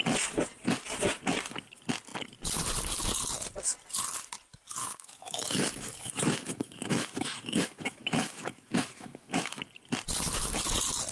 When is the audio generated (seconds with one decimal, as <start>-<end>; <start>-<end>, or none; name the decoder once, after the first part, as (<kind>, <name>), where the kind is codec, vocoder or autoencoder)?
4.8-9.6 (autoencoder, DAC-VAE)